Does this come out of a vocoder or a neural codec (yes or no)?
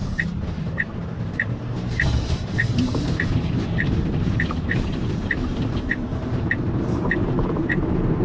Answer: yes